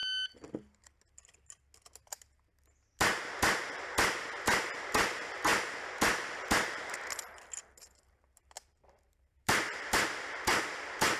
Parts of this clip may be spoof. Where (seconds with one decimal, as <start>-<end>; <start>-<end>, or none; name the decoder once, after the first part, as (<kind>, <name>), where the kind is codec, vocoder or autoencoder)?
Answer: 3.2-11.2 (vocoder, BigVGAN v2)